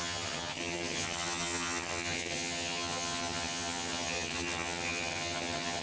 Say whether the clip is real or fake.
fake